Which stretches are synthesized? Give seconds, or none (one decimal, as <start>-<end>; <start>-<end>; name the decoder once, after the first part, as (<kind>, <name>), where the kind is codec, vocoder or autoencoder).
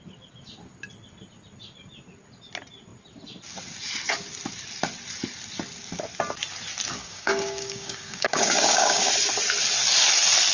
7.0-9.1 (codec, DAC)